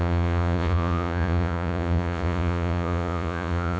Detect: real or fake fake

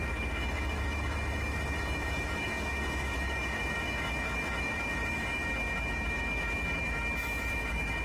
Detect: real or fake fake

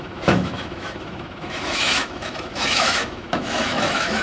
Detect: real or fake fake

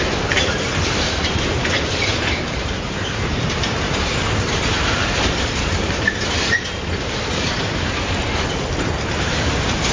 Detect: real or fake fake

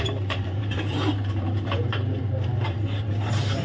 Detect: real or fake fake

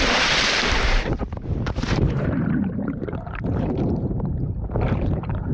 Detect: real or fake fake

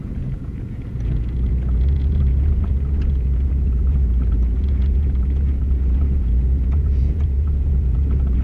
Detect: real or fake fake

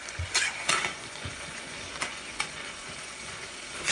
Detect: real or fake fake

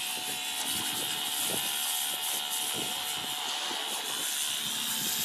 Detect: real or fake real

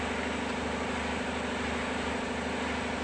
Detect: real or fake real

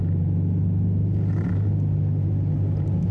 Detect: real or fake real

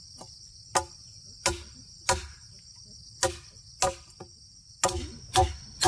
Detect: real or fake real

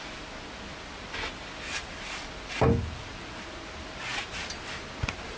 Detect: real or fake real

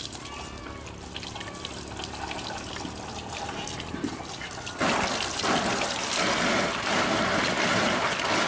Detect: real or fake real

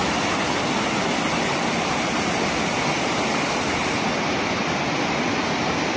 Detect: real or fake real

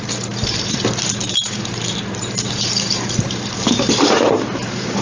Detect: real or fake fake